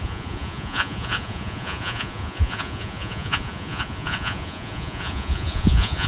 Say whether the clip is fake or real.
fake